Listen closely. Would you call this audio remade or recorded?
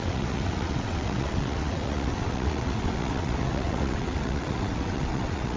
remade